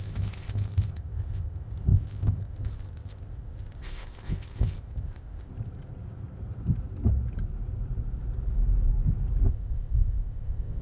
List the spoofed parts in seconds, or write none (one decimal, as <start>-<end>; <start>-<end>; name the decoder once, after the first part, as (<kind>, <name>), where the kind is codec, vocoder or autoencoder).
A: 0.0-5.5 (codec, ZipCodec); 9.5-10.8